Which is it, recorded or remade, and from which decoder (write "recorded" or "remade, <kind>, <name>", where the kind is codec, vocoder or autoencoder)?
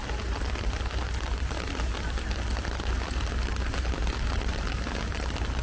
recorded